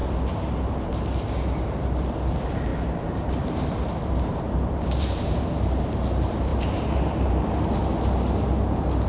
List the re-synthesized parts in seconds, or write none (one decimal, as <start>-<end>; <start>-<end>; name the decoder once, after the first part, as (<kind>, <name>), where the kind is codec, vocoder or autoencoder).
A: 2.7-5.4 (vocoder, BigVGAN v2); 6.5-7.8